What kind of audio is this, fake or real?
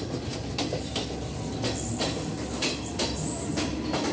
real